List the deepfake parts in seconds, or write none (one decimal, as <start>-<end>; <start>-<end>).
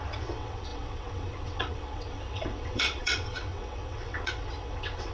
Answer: 0.0-5.1